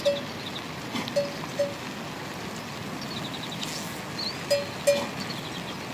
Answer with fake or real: real